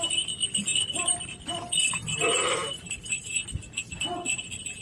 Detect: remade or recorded recorded